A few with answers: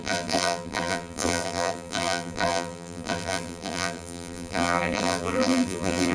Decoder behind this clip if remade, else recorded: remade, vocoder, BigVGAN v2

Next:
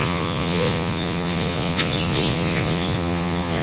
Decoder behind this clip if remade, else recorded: remade, vocoder, Vocos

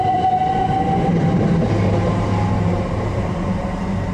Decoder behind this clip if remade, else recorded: remade, vocoder, BigVGAN v2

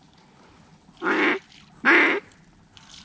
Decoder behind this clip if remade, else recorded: recorded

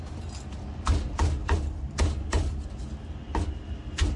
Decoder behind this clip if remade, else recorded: recorded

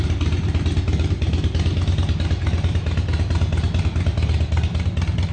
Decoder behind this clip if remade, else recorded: recorded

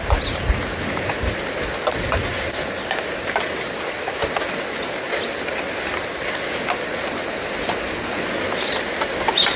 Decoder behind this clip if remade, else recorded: recorded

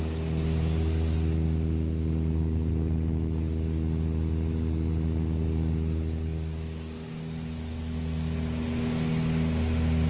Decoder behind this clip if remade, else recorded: recorded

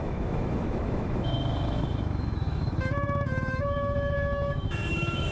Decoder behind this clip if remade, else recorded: remade, autoencoder, DAC-VAE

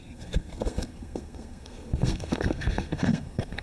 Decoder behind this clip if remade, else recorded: remade, codec, SNAC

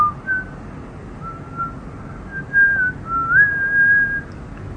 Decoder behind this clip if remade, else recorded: recorded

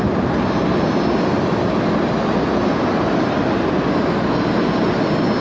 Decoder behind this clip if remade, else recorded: recorded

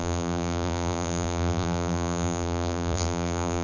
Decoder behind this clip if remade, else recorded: remade, vocoder, BigVGAN v2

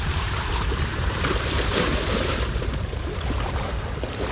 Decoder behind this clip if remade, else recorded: remade, vocoder, BigVGAN v2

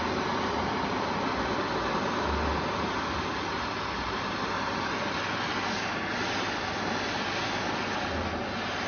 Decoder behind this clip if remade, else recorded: recorded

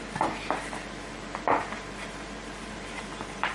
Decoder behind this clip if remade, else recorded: remade, vocoder, BigVGAN v2